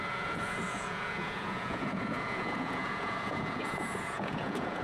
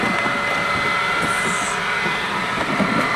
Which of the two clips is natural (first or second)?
second